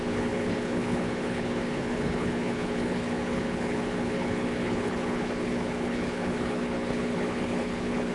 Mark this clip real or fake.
fake